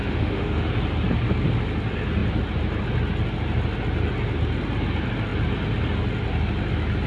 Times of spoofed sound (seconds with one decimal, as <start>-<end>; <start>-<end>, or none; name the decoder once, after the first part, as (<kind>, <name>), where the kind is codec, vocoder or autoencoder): 0.0-0.7 (autoencoder, DAC-VAE)